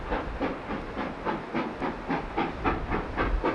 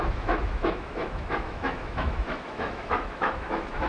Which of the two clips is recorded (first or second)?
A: first